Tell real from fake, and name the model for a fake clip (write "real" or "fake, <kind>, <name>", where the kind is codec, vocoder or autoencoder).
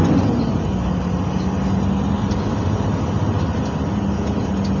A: real